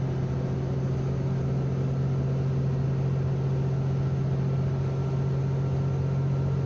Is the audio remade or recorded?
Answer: recorded